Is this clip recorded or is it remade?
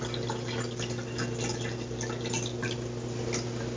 recorded